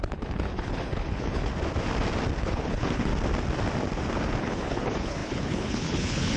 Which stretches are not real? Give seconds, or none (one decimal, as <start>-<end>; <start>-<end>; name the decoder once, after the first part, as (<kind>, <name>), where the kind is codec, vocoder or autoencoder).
0.0-1.5 (codec, HILCodec); 2.4-3.1; 4.4-6.4